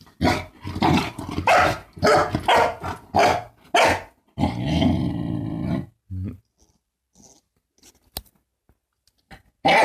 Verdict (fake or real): real